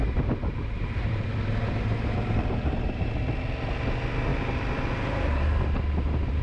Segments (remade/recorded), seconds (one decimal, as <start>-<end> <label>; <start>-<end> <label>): 0.0-3.1 remade; 3.1-6.4 recorded